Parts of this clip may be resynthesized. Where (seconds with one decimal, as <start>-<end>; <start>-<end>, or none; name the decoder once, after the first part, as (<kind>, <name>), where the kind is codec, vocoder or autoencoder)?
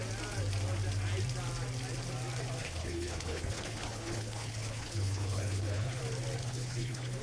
2.6-6.0 (codec, HILCodec); 6.4-7.2